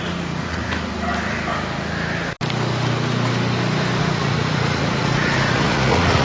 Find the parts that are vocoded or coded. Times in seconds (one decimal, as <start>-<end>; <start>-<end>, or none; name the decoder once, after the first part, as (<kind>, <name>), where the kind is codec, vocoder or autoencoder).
0.0-0.6 (vocoder, Vocos); 4.0-6.2